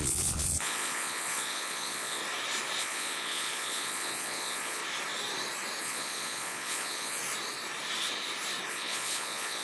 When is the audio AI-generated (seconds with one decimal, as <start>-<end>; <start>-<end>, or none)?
0.0-2.2; 2.8-4.8; 5.8-7.2; 8.7-9.6

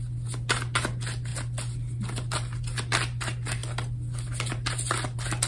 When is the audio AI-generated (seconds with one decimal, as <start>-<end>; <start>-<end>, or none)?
none

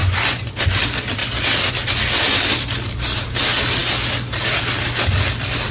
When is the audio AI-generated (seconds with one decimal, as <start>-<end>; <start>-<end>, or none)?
0.0-0.5

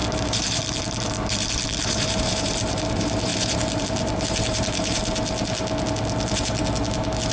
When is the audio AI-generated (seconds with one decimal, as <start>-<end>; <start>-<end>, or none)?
0.0-5.0

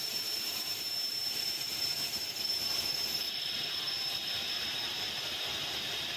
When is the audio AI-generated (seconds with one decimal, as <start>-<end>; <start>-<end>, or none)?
none

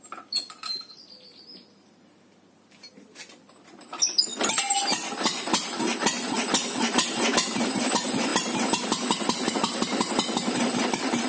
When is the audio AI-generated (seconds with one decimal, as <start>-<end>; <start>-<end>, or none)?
none

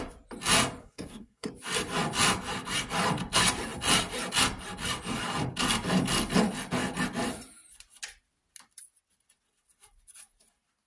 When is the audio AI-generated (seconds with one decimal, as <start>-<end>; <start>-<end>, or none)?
0.8-1.5

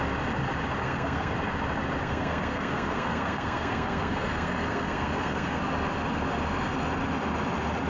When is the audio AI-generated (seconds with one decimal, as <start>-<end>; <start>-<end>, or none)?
0.8-1.3; 2.0-5.6